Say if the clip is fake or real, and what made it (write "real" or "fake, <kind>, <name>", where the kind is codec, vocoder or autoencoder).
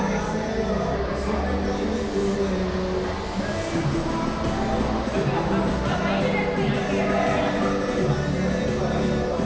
real